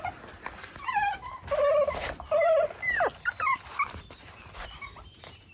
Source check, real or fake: fake